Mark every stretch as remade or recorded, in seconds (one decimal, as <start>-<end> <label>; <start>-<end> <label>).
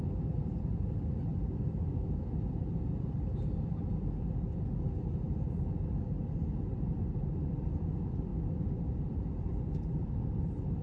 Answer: 0.0-1.3 recorded; 1.3-3.9 remade; 3.9-8.3 recorded; 8.3-10.4 remade; 10.4-10.8 recorded